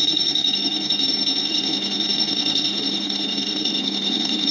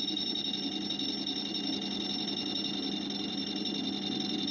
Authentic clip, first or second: second